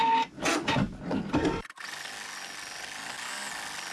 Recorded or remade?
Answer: recorded